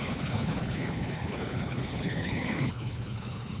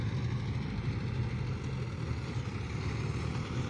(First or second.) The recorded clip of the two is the second